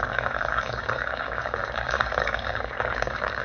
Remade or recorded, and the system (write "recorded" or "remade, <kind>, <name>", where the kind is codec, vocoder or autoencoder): remade, codec, DAC